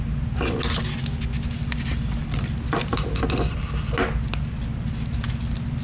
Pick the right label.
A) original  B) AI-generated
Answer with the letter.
A